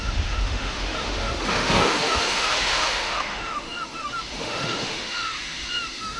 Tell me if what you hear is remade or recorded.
remade